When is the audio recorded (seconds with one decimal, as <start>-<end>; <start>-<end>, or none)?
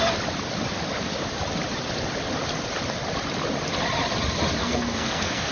0.0-4.6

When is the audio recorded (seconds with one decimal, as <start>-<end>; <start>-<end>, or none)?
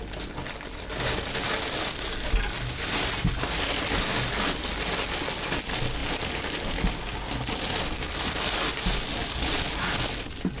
0.0-10.6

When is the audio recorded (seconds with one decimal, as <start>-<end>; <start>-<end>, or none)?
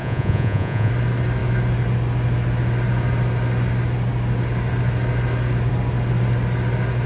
0.9-7.1